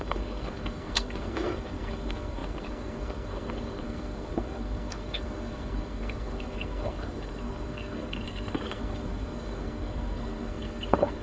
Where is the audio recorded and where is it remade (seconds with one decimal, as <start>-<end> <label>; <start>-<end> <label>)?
0.0-11.2 remade

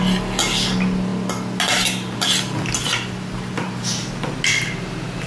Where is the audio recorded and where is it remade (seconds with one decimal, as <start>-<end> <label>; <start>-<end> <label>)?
0.0-5.3 recorded

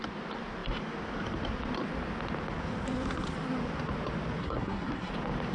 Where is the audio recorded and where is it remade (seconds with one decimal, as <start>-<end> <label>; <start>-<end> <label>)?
0.0-4.4 recorded; 4.4-5.1 remade; 5.1-5.5 recorded